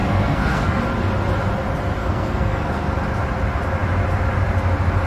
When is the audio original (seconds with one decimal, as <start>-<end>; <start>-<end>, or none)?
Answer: 0.8-2.0; 2.9-5.1